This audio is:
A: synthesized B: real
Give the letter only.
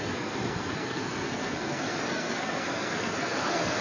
A